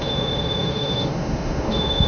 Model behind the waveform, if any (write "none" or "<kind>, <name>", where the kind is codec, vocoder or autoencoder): autoencoder, DAC-VAE